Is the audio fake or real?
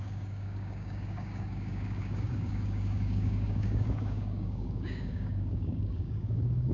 fake